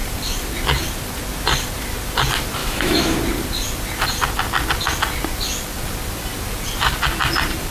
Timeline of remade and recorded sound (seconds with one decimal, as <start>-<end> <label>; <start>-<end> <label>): 0.0-2.6 recorded; 2.6-3.2 remade; 3.2-7.7 recorded